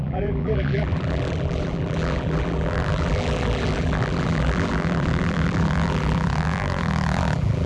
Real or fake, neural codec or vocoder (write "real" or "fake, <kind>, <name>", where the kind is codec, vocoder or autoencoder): fake, vocoder, BigVGAN v2